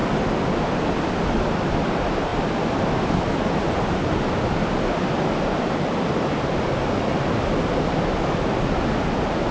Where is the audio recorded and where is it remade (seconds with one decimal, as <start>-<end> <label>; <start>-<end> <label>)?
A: 0.0-6.8 recorded; 6.8-7.3 remade; 7.3-9.5 recorded